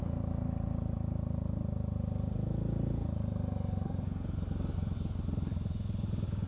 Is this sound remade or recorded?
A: recorded